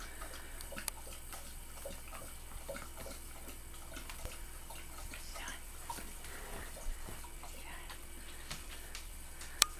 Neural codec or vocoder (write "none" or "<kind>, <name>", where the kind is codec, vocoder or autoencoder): vocoder, BigVGAN v2